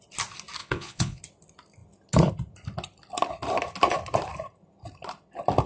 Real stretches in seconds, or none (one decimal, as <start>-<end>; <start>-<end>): 0.0-0.6; 1.2-5.7

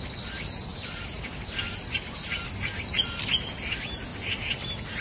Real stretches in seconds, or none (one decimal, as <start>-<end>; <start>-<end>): 0.0-0.7; 2.4-4.1

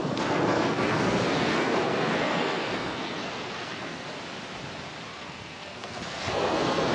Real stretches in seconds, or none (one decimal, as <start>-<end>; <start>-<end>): 4.1-5.1

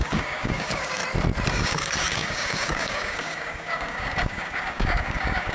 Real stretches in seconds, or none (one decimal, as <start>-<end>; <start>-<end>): 1.0-1.5

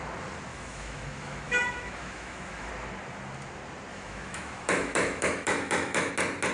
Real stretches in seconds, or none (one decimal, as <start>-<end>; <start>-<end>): 0.0-0.5; 2.7-3.9; 6.1-6.5

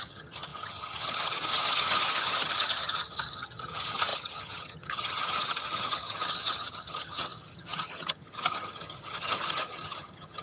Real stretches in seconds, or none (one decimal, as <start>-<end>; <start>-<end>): none

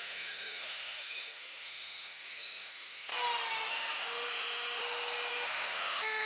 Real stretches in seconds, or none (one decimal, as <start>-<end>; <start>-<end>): 3.1-3.7; 4.8-5.3

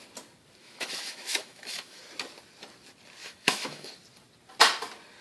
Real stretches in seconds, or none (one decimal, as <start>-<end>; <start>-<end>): 0.0-0.6; 2.0-3.2; 3.9-5.2